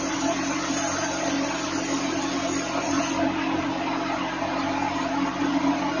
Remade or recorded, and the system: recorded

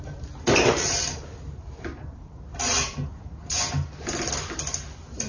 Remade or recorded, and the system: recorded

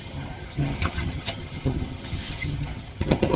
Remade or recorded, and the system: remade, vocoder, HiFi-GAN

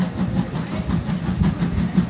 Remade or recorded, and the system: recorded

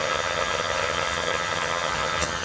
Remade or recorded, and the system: remade, vocoder, HiFi-GAN